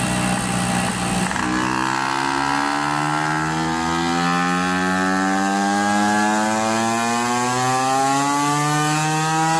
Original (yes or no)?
yes